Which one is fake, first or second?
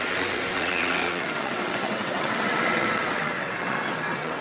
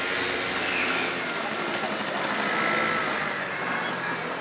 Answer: first